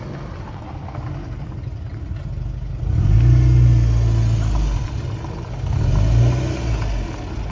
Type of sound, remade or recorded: recorded